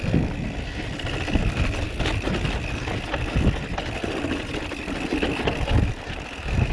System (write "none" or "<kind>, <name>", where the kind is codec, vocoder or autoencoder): none